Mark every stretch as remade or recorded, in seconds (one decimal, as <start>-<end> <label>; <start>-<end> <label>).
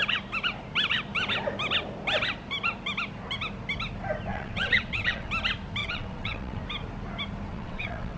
0.0-4.3 recorded; 4.3-5.3 remade; 5.3-5.8 recorded; 5.8-6.6 remade; 6.6-7.5 recorded; 7.5-8.2 remade